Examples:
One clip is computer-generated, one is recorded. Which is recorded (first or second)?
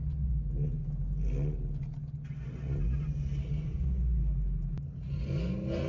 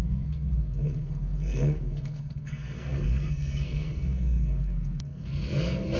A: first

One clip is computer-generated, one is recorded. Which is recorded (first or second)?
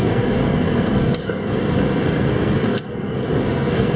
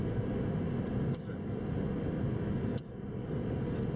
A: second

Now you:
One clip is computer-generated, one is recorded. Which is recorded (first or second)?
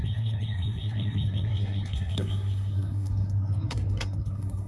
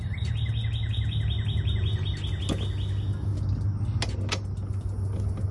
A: second